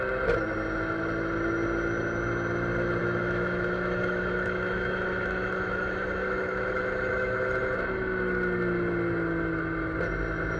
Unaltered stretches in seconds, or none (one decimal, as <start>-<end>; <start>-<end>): 0.0-3.0; 7.6-10.6